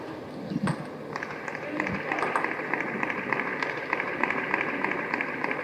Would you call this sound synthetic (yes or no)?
no